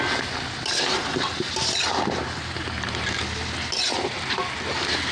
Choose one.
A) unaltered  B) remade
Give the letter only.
A